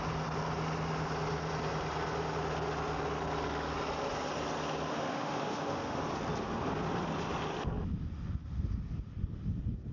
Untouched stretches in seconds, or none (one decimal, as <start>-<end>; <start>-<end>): 0.0-4.9; 6.0-9.9